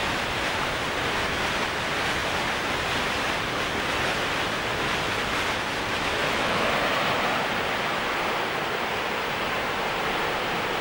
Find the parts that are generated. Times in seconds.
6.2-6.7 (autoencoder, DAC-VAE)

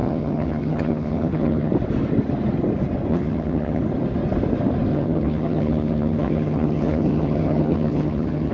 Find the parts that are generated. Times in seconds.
0.0-1.7 (vocoder, HiFi-GAN); 3.1-3.8; 4.9-8.5

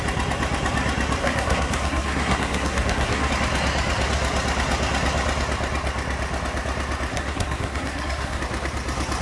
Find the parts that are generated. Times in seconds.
1.2-3.3 (codec, SNAC); 7.1-8.4

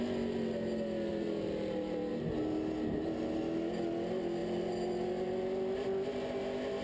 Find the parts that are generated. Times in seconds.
1.1-2.1 (vocoder, BigVGAN v2)

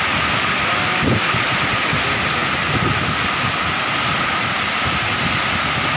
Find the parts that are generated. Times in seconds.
none

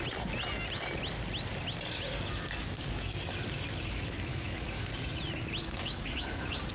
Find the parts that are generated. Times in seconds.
2.6-3.3 (codec, DAC); 4.3-4.9; 5.6-6.7

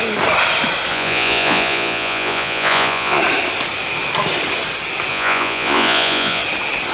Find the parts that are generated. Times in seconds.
0.9-3.2 (vocoder, Vocos); 5.1-6.4